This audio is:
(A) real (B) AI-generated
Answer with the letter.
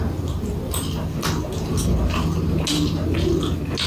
A